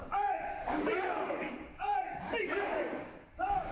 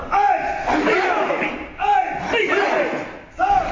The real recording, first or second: second